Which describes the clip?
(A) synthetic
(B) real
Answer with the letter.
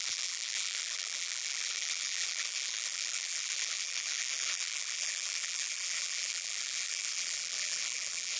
A